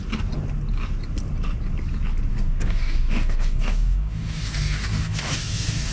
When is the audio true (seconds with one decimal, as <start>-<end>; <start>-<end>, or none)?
0.0-2.3